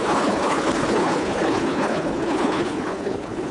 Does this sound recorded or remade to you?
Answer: remade